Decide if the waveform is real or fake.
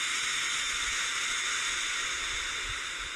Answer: real